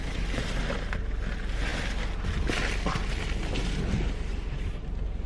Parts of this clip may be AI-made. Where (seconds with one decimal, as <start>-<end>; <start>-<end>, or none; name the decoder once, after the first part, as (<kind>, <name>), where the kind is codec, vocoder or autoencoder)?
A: none